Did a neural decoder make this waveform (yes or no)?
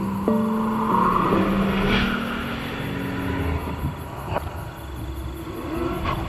no